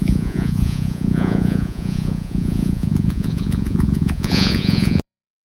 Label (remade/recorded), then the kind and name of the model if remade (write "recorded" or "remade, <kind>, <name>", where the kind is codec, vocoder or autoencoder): remade, vocoder, Vocos